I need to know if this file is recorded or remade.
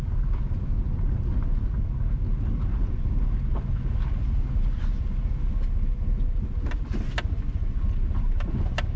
recorded